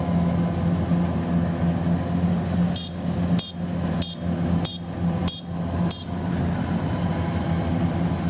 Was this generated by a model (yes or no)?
no